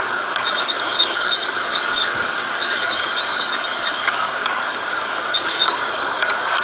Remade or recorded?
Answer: remade